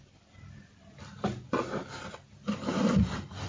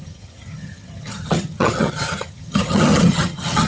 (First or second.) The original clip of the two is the first